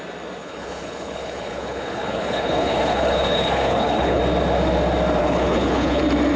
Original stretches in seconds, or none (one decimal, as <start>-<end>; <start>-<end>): 0.0-0.4; 4.2-5.2; 6.0-6.4